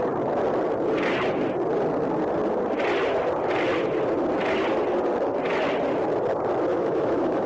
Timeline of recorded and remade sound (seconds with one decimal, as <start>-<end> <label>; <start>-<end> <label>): 0.0-6.7 recorded; 6.7-7.5 remade